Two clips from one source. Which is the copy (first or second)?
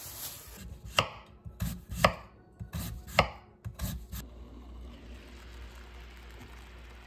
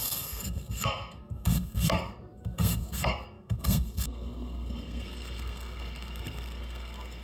second